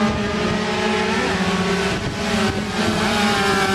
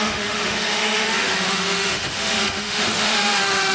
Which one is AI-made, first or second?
second